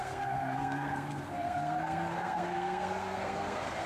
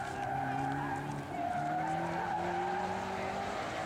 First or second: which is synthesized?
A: first